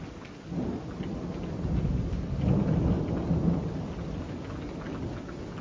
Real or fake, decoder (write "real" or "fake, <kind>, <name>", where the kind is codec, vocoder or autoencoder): real